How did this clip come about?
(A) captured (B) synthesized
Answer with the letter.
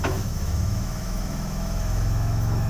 B